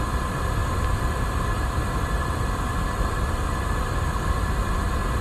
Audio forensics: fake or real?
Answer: real